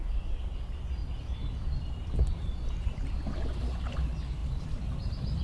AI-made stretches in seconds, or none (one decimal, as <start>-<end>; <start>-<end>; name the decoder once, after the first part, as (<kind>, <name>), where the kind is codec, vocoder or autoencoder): 1.0-3.6 (vocoder, BigVGAN v2); 4.4-5.4